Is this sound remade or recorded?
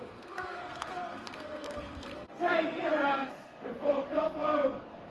remade